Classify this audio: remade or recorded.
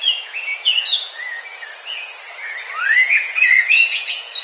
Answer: remade